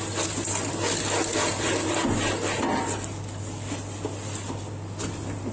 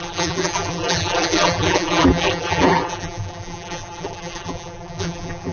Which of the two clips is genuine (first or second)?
first